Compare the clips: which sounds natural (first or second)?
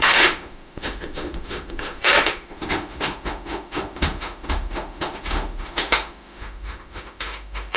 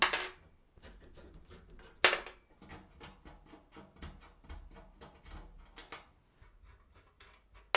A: second